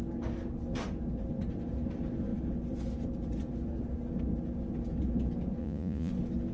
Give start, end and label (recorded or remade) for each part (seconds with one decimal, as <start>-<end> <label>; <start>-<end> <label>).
0.0-5.6 recorded; 5.6-6.1 remade; 6.1-6.5 recorded